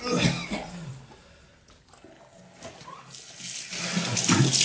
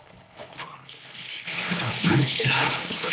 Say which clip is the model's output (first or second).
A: second